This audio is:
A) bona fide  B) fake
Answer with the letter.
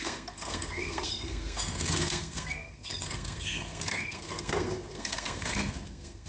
B